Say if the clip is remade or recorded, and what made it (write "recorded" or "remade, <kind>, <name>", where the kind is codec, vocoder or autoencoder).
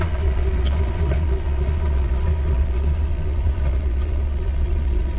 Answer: remade, vocoder, Vocos